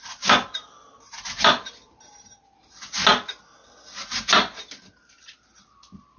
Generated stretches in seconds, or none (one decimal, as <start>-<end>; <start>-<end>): none